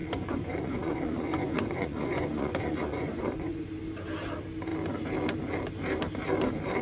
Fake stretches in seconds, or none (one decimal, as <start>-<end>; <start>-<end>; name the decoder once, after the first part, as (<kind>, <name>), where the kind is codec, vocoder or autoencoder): 0.0-3.6 (vocoder, Vocos)